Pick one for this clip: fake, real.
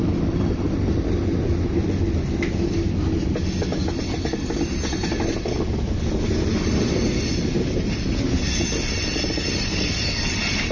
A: real